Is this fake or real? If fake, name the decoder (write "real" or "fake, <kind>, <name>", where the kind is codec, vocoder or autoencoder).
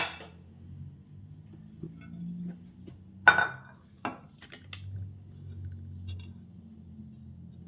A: real